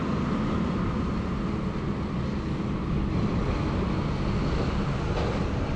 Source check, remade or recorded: recorded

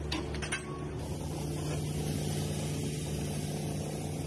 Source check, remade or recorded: recorded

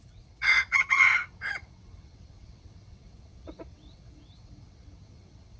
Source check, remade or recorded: remade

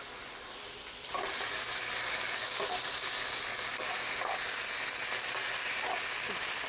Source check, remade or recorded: recorded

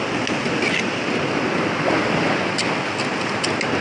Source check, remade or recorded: recorded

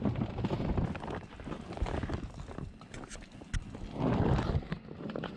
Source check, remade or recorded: recorded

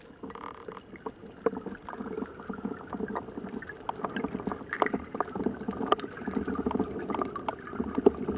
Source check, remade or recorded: recorded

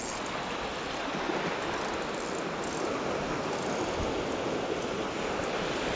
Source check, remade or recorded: recorded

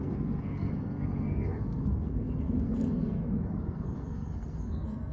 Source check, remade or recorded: remade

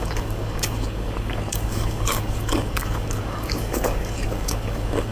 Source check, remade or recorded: remade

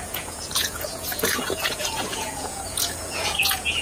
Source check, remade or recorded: remade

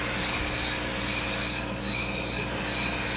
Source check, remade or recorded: recorded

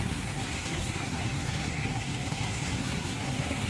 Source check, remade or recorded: remade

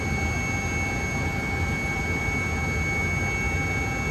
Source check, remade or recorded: recorded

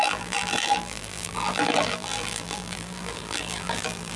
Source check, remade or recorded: remade